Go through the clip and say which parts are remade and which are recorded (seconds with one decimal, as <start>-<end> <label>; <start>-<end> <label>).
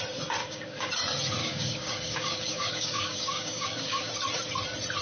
0.0-0.4 recorded; 0.4-0.9 remade; 0.9-1.4 recorded; 1.4-4.1 remade; 4.1-5.0 recorded